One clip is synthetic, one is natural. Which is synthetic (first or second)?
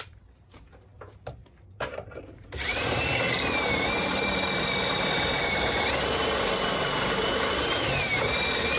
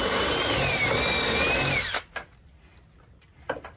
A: first